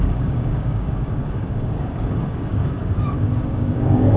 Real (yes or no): no